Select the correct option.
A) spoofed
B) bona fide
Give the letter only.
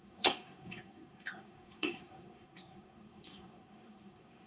A